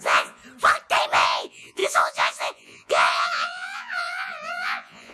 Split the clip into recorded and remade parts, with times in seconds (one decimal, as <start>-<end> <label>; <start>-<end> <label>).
0.0-0.4 remade; 0.4-1.1 recorded; 1.1-5.1 remade